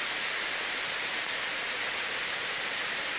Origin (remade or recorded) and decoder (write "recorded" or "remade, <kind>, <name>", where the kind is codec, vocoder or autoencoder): recorded